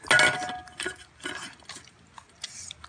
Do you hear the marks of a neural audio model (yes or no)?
no